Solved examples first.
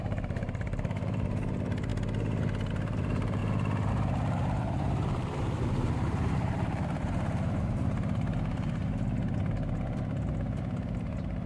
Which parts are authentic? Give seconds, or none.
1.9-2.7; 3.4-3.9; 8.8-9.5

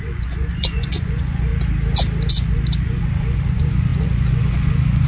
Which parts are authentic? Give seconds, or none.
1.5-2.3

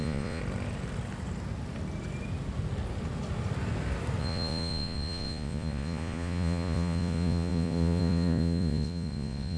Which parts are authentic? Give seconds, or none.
0.4-4.2

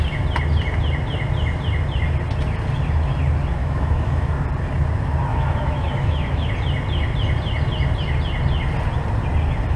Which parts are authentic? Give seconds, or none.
0.0-3.6; 4.3-5.3; 6.5-9.8